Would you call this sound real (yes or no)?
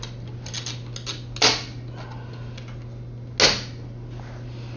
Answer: yes